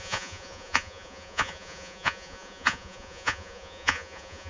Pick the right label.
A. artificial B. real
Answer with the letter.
A